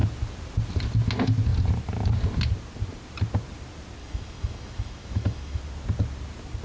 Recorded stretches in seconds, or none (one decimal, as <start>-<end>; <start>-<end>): 0.0-4.0; 5.6-6.6